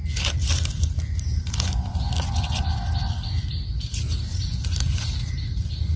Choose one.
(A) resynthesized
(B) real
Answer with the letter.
B